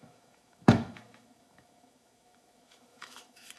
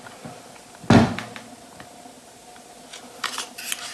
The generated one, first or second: first